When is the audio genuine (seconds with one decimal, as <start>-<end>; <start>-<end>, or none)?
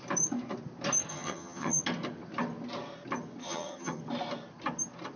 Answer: 0.0-1.1; 1.8-3.4; 4.0-5.2